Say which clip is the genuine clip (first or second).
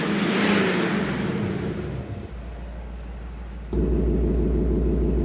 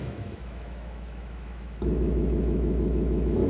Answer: first